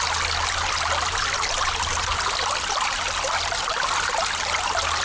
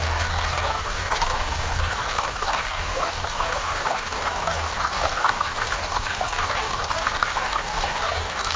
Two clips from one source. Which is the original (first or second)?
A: first